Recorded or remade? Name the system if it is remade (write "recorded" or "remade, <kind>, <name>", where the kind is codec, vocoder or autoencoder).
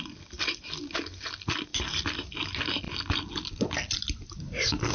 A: recorded